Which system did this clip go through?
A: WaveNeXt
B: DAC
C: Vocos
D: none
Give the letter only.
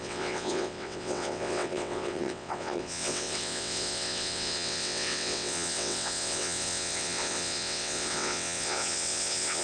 A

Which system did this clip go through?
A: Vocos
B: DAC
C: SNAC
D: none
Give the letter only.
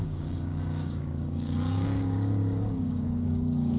B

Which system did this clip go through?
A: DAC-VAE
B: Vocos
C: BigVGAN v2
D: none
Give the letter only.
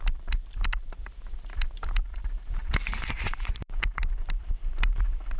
C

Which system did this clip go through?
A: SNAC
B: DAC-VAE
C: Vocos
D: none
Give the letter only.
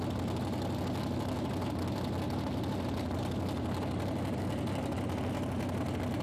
D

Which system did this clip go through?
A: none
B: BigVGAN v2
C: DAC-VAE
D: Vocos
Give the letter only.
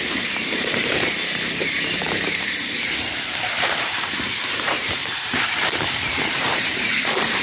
B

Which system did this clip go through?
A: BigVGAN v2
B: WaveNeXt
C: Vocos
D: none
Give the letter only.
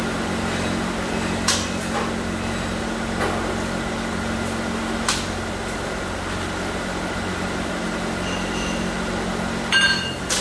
D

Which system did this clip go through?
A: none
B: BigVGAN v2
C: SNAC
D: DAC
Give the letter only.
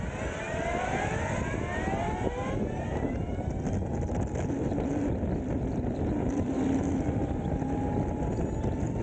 A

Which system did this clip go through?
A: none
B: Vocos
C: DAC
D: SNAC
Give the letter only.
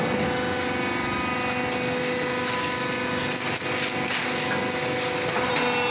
A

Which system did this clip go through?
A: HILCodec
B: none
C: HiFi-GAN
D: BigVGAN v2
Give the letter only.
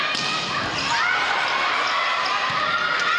B